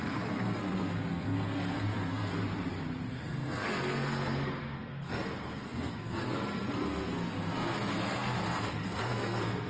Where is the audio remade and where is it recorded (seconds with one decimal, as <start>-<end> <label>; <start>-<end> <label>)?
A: 0.0-2.3 remade; 2.3-3.1 recorded; 3.1-9.7 remade